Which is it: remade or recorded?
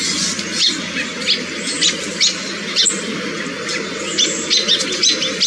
recorded